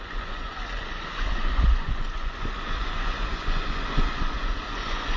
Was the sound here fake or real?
fake